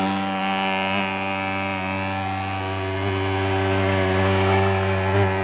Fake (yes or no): no